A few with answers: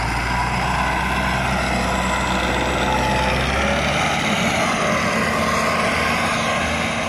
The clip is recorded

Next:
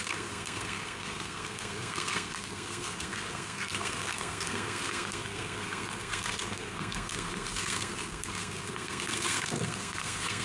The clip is remade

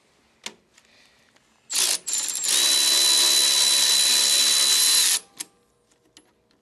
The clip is recorded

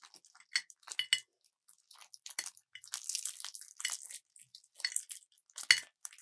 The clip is recorded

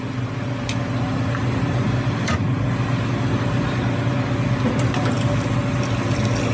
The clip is recorded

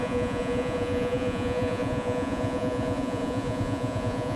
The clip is remade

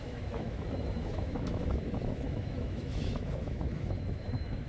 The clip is remade